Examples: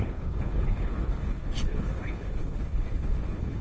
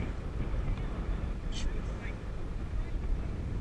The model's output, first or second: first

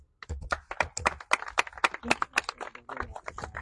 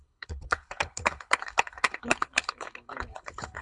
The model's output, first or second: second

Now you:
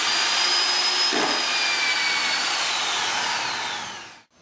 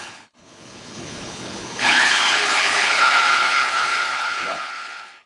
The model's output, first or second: second